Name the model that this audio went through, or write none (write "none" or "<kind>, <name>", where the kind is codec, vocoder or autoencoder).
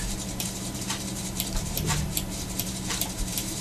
vocoder, BigVGAN v2